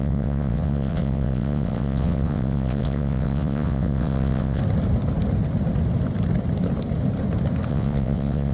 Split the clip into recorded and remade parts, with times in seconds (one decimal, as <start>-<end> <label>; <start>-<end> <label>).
0.0-4.6 remade; 4.6-7.7 recorded; 7.7-8.5 remade